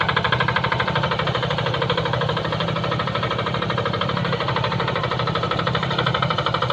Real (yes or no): no